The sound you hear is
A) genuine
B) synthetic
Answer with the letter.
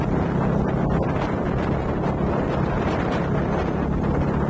A